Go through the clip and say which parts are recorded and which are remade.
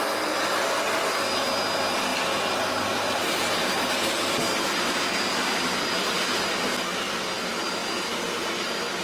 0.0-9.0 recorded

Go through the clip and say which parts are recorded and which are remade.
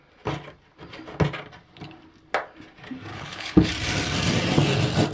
0.0-3.1 recorded; 3.1-3.7 remade; 3.7-5.1 recorded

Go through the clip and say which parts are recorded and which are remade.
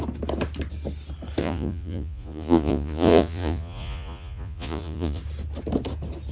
0.0-1.4 recorded; 1.4-5.2 remade; 5.2-6.3 recorded